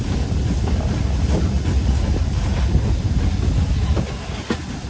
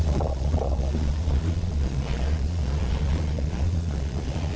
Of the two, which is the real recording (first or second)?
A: first